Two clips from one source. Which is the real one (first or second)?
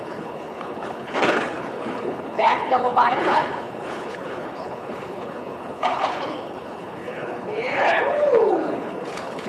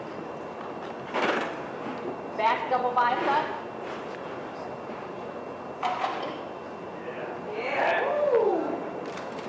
second